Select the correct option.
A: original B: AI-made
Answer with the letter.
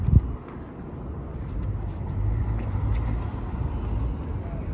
A